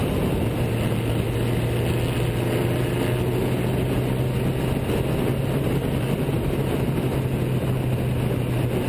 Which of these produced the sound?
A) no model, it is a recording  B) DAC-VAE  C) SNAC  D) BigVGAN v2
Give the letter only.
A